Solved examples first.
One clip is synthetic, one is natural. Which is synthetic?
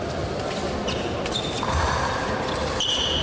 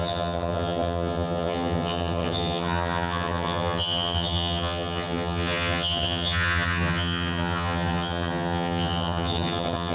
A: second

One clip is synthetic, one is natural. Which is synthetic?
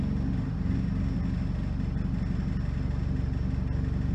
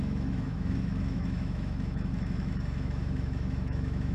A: second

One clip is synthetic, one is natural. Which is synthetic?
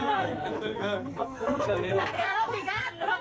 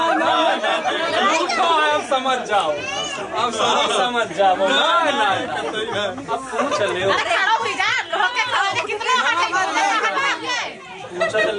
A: first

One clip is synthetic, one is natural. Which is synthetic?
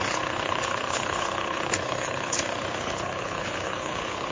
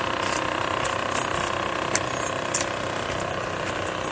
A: first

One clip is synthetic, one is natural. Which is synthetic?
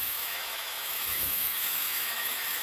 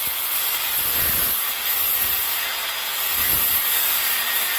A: first